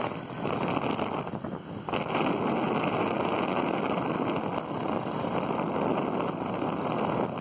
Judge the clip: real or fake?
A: real